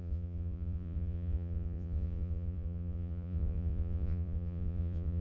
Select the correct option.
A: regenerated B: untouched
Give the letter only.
A